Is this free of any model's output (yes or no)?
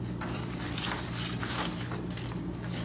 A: yes